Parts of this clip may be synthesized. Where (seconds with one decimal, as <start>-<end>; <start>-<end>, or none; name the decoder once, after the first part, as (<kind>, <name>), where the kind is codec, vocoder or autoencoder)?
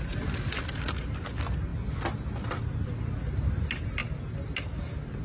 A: none